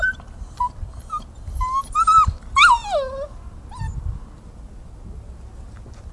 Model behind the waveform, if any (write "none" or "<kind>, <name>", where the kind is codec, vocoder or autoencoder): none